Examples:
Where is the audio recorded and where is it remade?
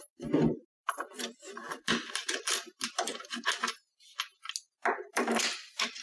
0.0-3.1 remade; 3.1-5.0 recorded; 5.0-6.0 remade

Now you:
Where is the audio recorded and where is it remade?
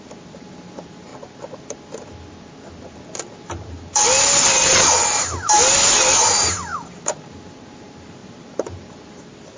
0.0-1.1 remade; 1.1-6.2 recorded; 6.2-6.7 remade; 6.7-7.2 recorded; 7.2-9.6 remade